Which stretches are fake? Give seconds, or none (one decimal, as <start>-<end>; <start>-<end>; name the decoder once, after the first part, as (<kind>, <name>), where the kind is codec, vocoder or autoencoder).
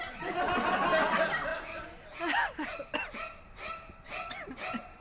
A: none